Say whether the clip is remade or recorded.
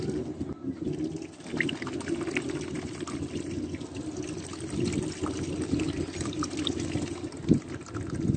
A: recorded